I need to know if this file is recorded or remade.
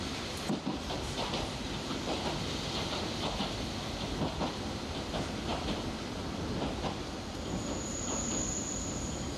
remade